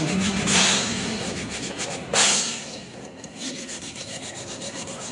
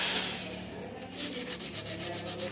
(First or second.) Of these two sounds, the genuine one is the second